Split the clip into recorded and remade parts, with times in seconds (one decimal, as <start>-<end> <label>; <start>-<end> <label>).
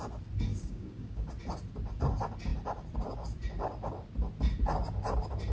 0.0-0.5 recorded; 0.5-1.3 remade; 1.3-5.5 recorded